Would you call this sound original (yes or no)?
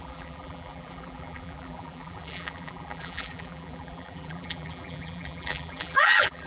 no